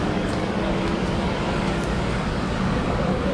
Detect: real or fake fake